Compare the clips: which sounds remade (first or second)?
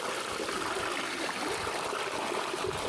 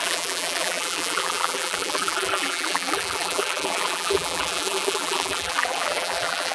second